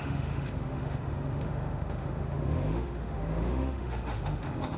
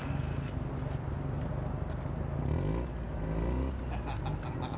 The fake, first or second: first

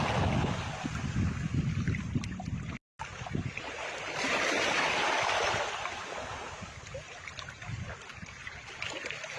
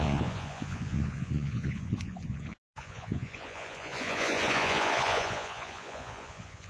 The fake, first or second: second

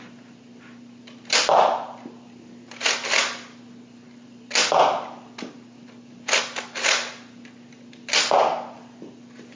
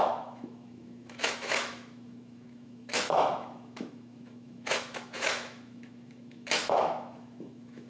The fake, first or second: second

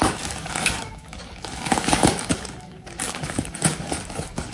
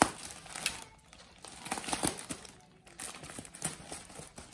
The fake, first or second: first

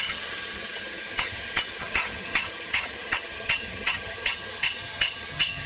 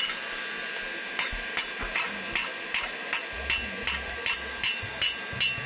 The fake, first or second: first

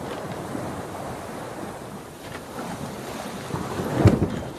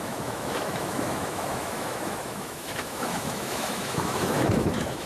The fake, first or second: second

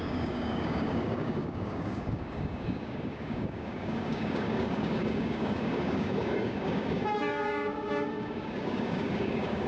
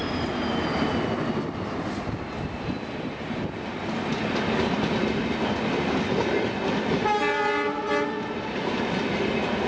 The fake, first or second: first